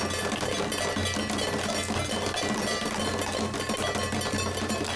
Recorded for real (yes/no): yes